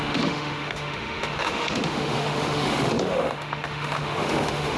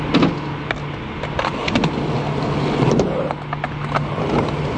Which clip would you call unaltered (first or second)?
second